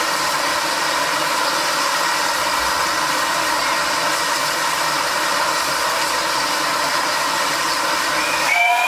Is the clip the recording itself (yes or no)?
no